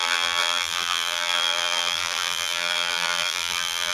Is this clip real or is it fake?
fake